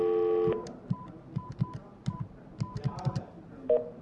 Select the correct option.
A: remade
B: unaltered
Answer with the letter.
B